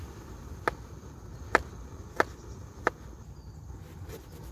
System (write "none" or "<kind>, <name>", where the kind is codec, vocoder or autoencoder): none